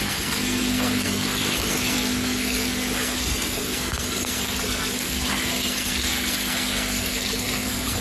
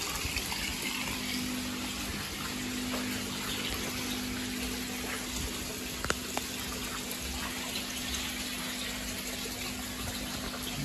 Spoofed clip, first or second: first